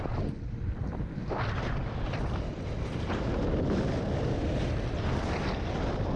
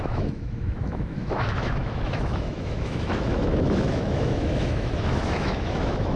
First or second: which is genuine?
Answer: first